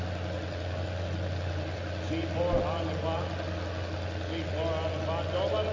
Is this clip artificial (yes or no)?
no